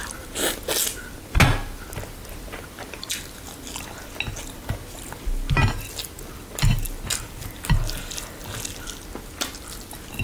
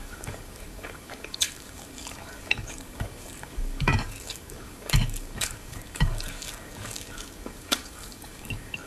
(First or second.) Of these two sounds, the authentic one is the first